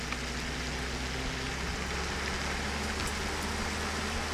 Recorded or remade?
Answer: recorded